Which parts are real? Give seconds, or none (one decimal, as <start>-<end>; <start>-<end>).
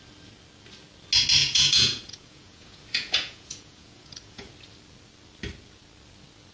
0.0-1.4; 4.5-6.5